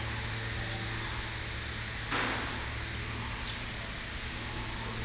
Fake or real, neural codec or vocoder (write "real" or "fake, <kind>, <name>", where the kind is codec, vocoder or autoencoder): real